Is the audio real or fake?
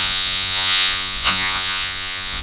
fake